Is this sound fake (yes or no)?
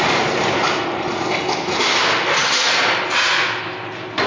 no